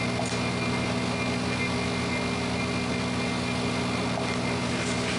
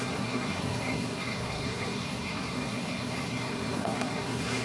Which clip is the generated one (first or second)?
second